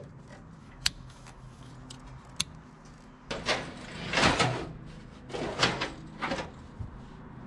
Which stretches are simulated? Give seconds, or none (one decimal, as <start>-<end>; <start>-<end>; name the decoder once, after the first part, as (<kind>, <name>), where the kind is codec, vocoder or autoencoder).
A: 0.6-1.7 (autoencoder, DAC-VAE)